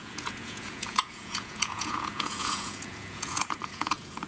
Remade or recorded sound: remade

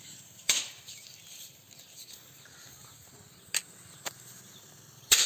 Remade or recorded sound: recorded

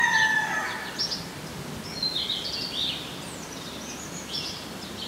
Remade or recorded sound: recorded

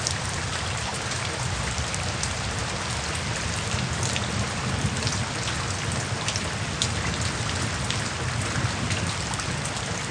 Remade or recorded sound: recorded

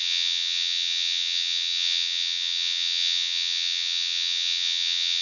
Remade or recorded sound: remade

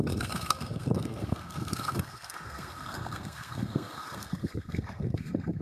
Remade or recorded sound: remade